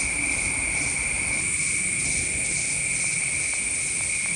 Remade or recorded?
recorded